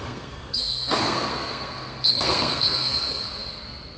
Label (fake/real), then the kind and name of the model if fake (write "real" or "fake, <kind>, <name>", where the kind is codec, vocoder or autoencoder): fake, codec, SNAC